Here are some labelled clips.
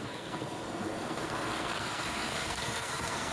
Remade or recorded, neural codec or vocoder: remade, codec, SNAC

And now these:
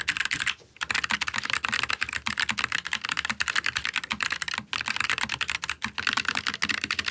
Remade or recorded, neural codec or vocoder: recorded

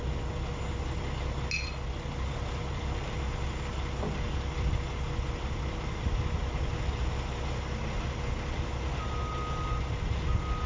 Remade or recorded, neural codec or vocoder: recorded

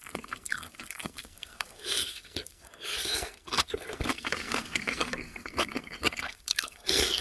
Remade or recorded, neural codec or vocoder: remade, codec, SNAC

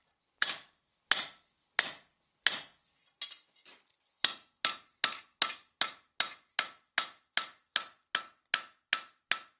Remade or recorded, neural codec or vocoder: recorded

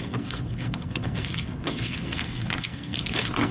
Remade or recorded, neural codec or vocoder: remade, codec, SNAC